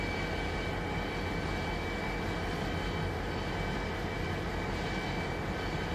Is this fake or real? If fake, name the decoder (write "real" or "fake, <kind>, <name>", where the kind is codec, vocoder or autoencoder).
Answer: real